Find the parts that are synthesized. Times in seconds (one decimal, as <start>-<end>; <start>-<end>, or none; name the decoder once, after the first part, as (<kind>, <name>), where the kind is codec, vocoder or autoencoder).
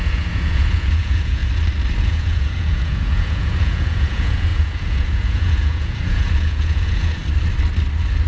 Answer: 0.0-1.4 (vocoder, Vocos); 2.0-7.2